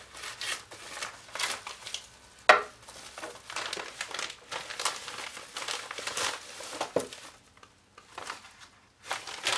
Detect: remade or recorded recorded